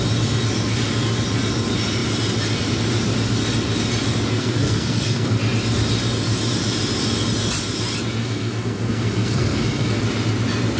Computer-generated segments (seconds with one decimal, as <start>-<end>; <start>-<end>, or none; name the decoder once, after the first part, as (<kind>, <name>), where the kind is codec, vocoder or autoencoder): 4.3-5.4 (codec, SNAC); 8.2-10.0